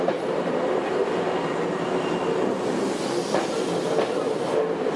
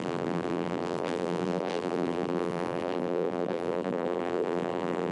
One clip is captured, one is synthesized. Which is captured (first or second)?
first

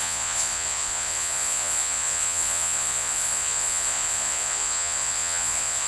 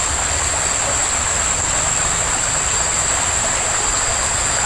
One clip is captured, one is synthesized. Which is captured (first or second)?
second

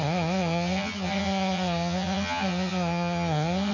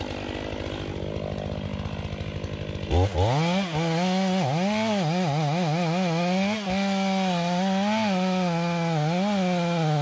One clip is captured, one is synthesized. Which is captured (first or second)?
second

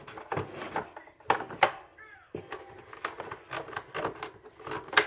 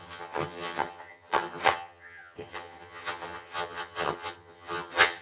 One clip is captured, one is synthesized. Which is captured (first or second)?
first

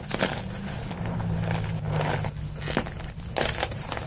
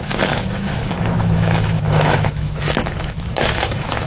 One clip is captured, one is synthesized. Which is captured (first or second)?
first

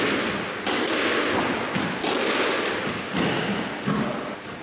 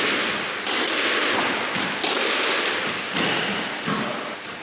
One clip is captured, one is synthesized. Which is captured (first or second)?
first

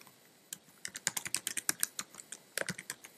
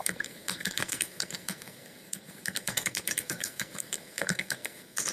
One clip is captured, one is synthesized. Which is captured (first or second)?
first